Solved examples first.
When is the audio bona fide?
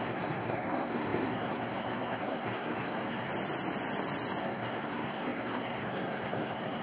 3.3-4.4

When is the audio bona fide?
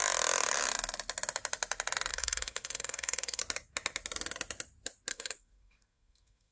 0.0-2.1; 3.4-5.1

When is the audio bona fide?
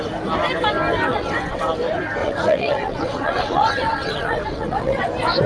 0.0-1.1; 1.6-2.2; 5.0-5.5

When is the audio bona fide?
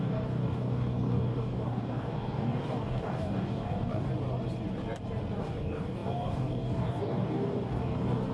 4.1-5.4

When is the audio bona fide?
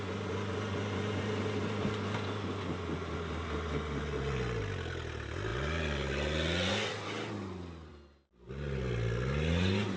0.0-10.0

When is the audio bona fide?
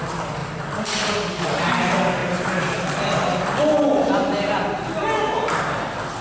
0.0-6.2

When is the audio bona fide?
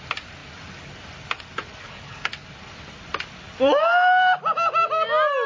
0.0-1.8; 2.3-5.5